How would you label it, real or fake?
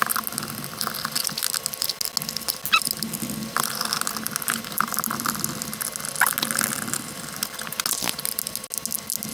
real